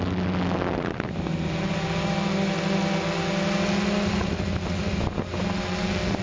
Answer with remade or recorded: recorded